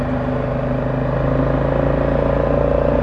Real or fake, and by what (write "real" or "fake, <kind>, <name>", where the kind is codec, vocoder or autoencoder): real